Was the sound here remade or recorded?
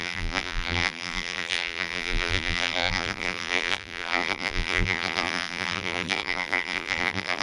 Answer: remade